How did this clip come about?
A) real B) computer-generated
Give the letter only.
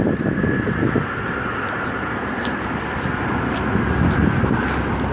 A